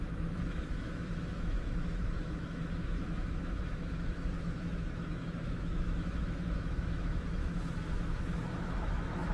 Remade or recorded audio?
remade